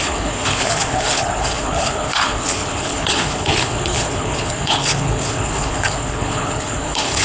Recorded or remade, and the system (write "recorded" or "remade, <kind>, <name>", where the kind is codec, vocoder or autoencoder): remade, codec, HILCodec